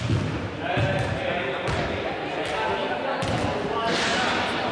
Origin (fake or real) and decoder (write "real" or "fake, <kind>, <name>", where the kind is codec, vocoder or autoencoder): real